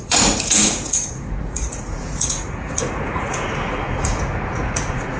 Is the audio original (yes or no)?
no